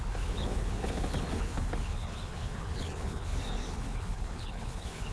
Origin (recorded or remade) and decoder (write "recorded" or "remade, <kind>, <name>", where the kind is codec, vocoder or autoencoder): remade, codec, HILCodec